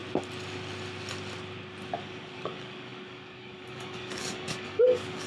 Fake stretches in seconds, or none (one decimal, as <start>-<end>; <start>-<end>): 2.0-5.3